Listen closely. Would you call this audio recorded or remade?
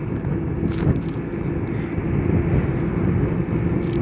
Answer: recorded